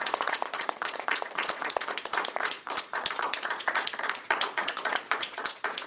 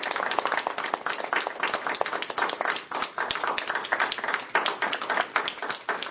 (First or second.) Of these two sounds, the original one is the second